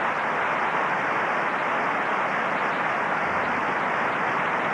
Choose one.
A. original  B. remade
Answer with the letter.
A